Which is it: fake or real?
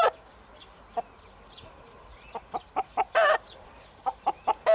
real